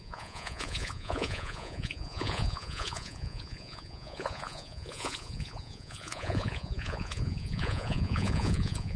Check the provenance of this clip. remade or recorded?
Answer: remade